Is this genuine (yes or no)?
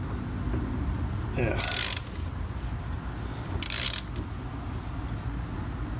yes